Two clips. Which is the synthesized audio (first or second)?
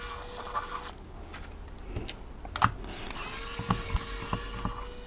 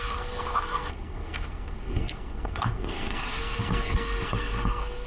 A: second